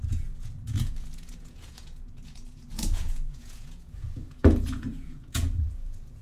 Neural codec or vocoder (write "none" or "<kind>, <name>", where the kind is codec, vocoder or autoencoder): vocoder, Vocos